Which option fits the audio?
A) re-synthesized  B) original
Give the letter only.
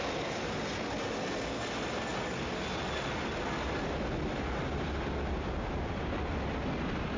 B